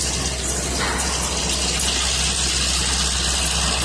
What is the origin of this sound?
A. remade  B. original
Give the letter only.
B